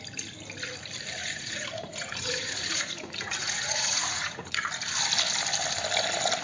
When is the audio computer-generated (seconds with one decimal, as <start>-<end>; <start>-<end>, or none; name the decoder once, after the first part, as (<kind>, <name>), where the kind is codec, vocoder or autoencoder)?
1.2-4.7 (vocoder, Vocos)